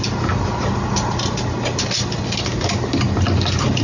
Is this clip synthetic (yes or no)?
no